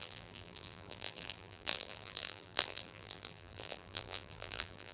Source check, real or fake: fake